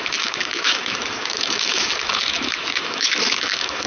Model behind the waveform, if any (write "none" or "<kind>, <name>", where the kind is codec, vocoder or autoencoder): autoencoder, DAC-VAE